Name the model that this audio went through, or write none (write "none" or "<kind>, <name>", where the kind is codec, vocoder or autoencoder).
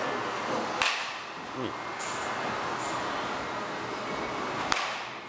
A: none